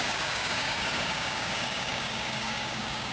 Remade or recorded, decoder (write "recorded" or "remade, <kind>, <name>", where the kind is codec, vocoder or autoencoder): remade, codec, DAC